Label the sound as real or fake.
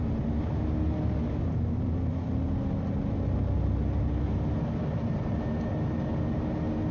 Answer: real